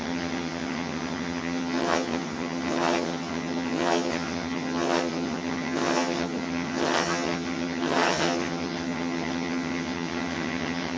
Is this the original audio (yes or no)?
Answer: no